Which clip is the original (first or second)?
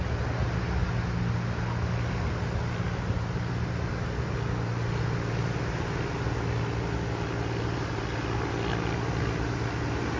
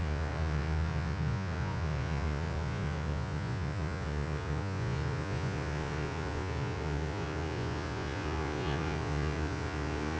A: first